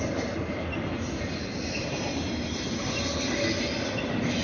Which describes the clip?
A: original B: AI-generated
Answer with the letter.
A